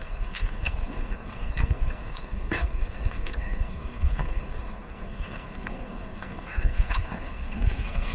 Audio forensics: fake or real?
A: fake